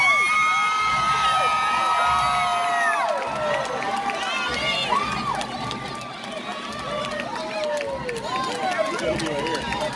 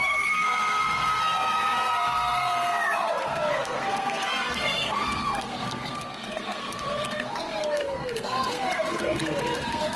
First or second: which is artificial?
second